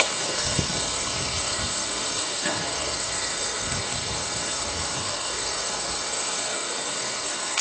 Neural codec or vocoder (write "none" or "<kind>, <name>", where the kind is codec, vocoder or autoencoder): codec, SNAC